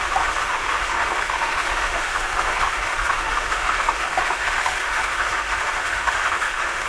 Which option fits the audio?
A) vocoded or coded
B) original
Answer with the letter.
A